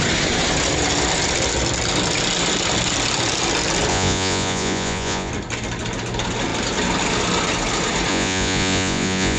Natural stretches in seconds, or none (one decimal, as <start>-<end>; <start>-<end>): 0.0-3.9; 5.3-8.1